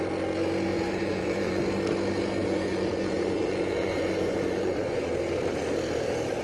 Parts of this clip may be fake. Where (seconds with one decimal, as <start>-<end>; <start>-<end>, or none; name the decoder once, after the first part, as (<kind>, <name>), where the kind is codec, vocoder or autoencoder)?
0.7-1.6 (vocoder, Vocos); 2.4-5.1